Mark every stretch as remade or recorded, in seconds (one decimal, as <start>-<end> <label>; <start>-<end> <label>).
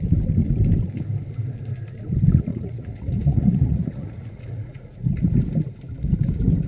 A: 0.0-2.5 recorded; 2.5-5.1 remade; 5.1-6.7 recorded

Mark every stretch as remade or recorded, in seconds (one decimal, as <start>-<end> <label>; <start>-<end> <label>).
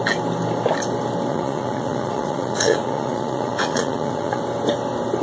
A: 0.0-1.3 recorded; 1.3-4.4 remade; 4.4-5.2 recorded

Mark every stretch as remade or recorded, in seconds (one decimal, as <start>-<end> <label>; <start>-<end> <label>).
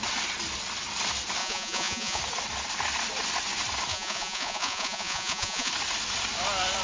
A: 0.0-1.4 recorded; 1.4-2.2 remade; 2.2-3.9 recorded; 3.9-5.7 remade; 5.7-6.8 recorded